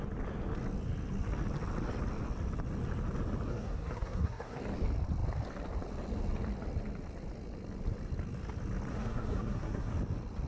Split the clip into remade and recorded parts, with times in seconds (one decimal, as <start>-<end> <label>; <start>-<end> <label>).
0.0-3.5 recorded; 3.5-4.6 remade; 4.6-8.9 recorded; 8.9-9.9 remade; 9.9-10.5 recorded